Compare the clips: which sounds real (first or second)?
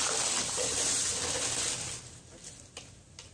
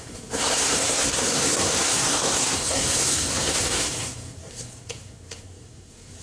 first